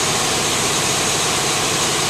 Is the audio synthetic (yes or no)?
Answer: yes